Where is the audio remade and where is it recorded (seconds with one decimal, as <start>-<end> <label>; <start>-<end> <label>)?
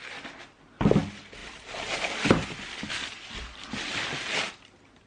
0.0-1.4 recorded; 1.4-4.5 remade; 4.5-5.1 recorded